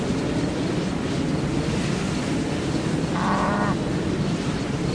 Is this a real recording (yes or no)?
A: yes